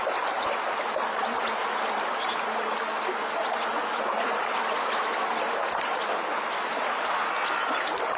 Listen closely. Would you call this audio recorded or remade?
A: recorded